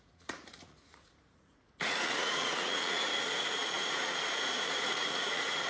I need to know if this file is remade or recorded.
remade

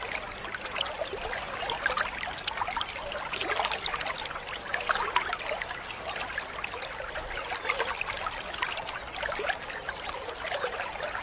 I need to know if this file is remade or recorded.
recorded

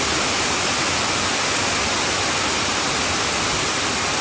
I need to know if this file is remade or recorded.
recorded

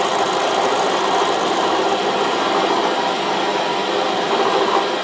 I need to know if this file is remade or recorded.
remade